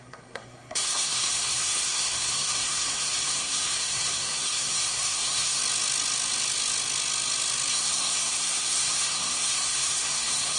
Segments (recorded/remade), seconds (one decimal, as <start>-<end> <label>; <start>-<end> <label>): 0.0-5.6 remade; 5.6-7.7 recorded; 7.7-10.6 remade